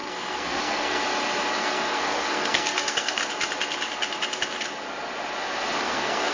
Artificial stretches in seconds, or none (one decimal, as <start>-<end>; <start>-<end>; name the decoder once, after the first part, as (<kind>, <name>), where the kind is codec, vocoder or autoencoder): 0.0-1.0 (codec, SNAC); 1.5-3.2; 5.8-6.3